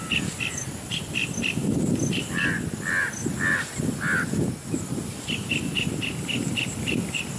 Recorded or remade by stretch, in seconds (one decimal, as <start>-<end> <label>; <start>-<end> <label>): 0.0-1.2 remade; 1.2-5.1 recorded; 5.1-7.4 remade